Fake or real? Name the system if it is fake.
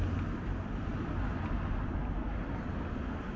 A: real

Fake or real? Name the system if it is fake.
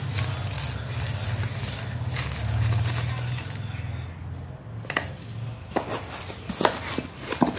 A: real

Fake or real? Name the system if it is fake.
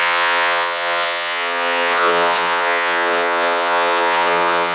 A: fake, vocoder, WaveNeXt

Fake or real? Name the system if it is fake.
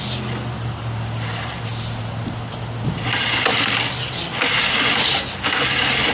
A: real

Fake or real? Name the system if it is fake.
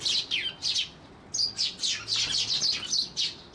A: real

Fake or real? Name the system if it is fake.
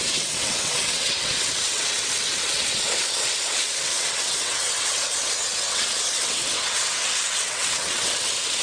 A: fake, vocoder, WaveNeXt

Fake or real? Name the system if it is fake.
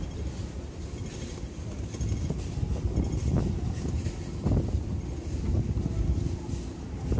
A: real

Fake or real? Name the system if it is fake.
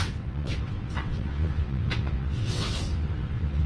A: fake, vocoder, WaveNeXt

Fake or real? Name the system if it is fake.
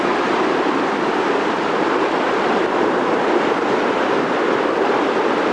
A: real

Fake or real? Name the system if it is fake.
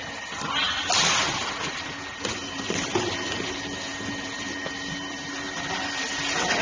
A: real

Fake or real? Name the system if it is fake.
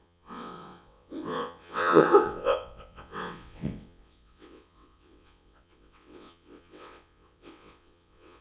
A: fake, vocoder, WaveNeXt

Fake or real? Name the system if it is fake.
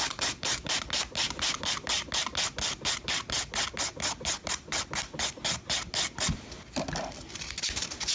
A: real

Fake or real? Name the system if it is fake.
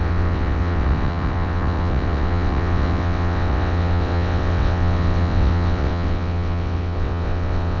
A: fake, vocoder, WaveNeXt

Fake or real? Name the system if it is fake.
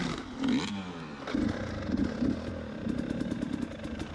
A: real